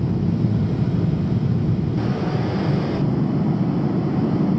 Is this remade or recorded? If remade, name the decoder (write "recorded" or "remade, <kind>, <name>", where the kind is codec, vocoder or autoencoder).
recorded